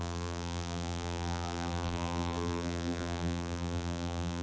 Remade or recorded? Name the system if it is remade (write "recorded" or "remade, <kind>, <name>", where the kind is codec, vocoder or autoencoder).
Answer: remade, vocoder, BigVGAN v2